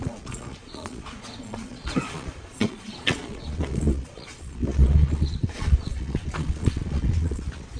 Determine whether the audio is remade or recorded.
remade